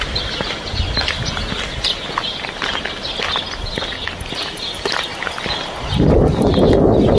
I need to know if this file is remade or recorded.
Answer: recorded